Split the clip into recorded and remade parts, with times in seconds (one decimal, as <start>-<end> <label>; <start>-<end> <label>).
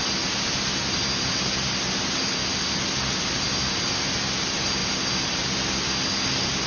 0.0-6.7 recorded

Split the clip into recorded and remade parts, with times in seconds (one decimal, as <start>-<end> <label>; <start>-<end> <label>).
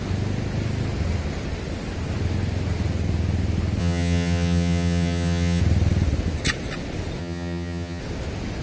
0.0-3.8 recorded; 3.8-5.6 remade; 5.6-7.2 recorded; 7.2-8.0 remade; 8.0-8.6 recorded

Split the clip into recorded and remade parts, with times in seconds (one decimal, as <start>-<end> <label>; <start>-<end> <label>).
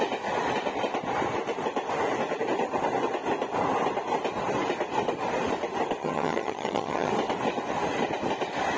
0.0-6.0 recorded; 6.0-7.1 remade; 7.1-8.8 recorded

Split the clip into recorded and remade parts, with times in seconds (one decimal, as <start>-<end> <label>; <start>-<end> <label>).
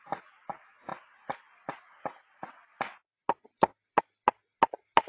0.0-5.1 recorded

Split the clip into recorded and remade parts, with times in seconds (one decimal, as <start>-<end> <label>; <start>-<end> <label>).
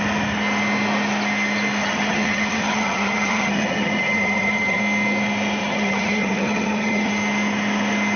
0.0-1.8 recorded; 1.8-4.8 remade; 4.8-5.6 recorded; 5.6-7.1 remade; 7.1-8.2 recorded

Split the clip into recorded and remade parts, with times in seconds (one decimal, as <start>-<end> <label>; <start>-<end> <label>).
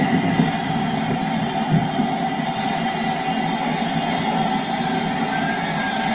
0.0-6.1 recorded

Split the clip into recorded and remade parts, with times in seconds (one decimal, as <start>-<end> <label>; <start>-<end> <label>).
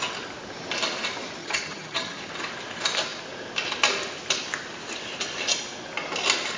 0.0-1.4 recorded; 1.4-2.2 remade; 2.2-6.6 recorded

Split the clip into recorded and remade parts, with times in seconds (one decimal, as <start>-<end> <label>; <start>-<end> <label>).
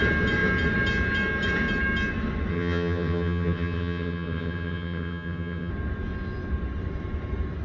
0.0-2.5 recorded; 2.5-5.7 remade; 5.7-7.6 recorded